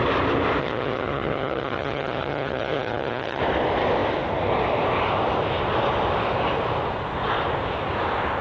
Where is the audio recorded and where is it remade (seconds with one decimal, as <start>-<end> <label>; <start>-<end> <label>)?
0.0-0.6 recorded; 0.6-3.4 remade; 3.4-8.4 recorded